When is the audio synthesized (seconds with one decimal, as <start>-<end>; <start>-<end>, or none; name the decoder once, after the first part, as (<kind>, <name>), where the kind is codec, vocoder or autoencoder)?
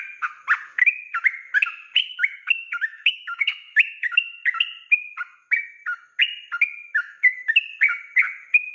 2.1-4.4 (autoencoder, DAC-VAE); 6.8-7.6